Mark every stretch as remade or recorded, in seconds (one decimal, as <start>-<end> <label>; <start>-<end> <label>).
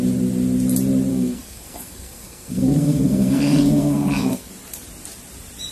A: 0.0-1.1 recorded; 1.1-4.5 remade; 4.5-5.7 recorded